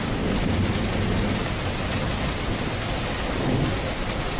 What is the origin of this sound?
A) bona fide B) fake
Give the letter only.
A